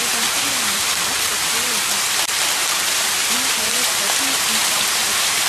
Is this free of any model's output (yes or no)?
no